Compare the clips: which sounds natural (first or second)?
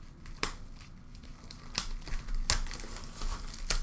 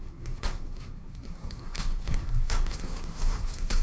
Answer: first